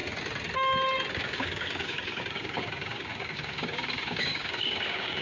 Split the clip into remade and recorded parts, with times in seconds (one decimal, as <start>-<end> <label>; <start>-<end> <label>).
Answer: 0.0-1.1 recorded; 1.1-5.2 remade